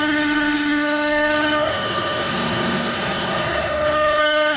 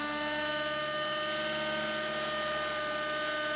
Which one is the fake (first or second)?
first